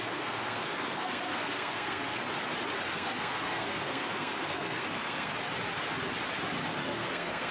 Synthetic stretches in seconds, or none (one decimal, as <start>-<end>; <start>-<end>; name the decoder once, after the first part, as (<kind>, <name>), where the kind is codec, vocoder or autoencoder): 0.0-2.2 (codec, SNAC); 2.9-5.3; 6.7-7.5